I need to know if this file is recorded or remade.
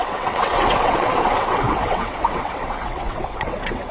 remade